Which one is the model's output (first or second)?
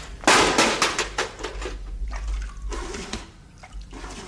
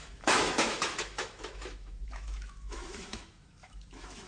second